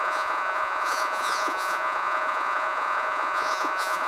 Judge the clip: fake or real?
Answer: fake